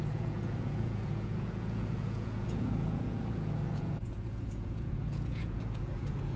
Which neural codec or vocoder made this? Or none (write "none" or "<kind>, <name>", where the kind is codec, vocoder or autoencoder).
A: vocoder, Vocos